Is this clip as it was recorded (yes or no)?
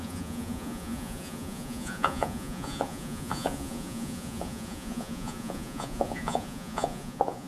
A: no